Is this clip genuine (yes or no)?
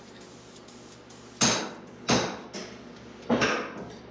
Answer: yes